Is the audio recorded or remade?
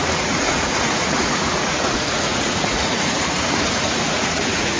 remade